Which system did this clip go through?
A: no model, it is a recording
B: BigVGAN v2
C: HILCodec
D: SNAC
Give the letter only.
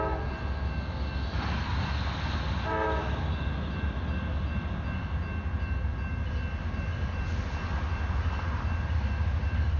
A